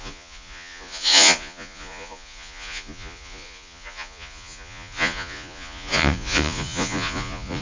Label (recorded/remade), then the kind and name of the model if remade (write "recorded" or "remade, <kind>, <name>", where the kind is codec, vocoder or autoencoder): remade, vocoder, Vocos